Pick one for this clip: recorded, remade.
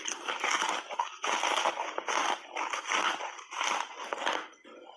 recorded